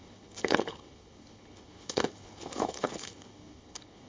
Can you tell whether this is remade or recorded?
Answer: remade